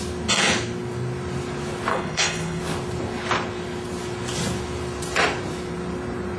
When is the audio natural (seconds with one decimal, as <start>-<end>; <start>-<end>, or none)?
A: 0.0-1.9; 2.6-6.4